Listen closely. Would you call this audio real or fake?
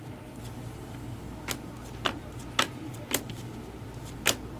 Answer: real